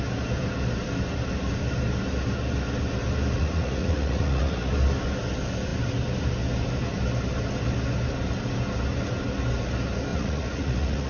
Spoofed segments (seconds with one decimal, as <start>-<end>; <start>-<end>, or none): 3.4-4.7; 10.1-11.1